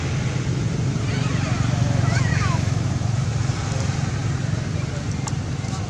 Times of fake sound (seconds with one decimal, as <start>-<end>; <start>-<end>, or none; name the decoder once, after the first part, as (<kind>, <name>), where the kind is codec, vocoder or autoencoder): 2.3-2.9 (autoencoder, DAC-VAE)